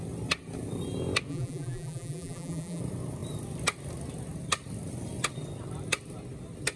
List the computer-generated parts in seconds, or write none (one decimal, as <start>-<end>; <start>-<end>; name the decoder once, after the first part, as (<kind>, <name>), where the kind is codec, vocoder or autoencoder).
1.3-2.8 (vocoder, BigVGAN v2)